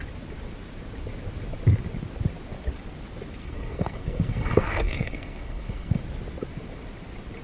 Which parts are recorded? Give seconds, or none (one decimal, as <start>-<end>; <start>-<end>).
0.0-3.4; 6.0-7.4